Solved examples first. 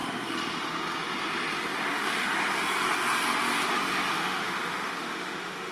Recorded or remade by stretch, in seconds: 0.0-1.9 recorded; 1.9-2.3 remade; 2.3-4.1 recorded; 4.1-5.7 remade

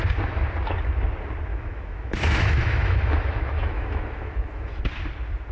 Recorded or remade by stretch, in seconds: 0.0-1.5 recorded; 1.5-4.8 remade; 4.8-5.5 recorded